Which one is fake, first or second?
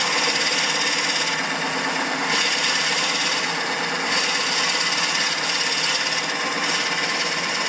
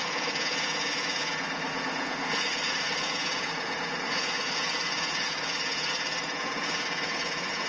second